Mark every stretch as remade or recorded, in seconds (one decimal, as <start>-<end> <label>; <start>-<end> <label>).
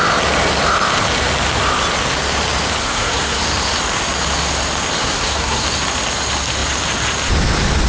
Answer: 0.0-2.8 recorded; 2.8-3.4 remade; 3.4-5.0 recorded; 5.0-5.6 remade; 5.6-7.9 recorded